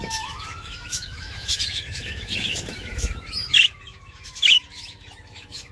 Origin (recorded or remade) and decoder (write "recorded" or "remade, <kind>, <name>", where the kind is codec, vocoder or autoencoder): remade, autoencoder, DAC-VAE